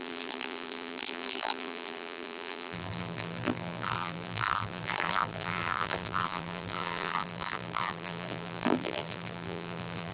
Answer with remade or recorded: remade